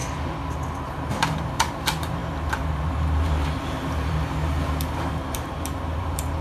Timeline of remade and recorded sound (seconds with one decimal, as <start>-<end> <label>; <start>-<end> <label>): 0.0-1.1 recorded; 1.1-6.4 remade